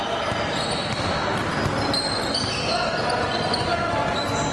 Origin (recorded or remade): recorded